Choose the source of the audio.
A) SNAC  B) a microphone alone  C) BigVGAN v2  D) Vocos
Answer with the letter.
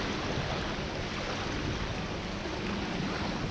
B